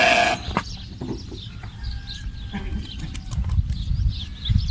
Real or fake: real